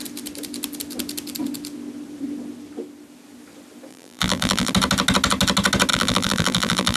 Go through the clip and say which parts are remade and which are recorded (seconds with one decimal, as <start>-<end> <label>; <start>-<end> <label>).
0.0-3.9 recorded; 3.9-4.7 remade; 4.7-5.9 recorded; 5.9-7.0 remade